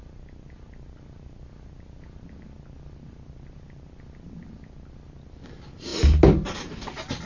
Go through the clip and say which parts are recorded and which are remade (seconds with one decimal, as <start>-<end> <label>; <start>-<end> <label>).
0.0-7.3 recorded